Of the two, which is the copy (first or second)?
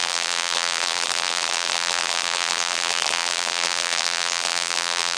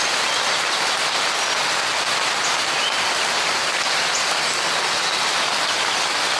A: first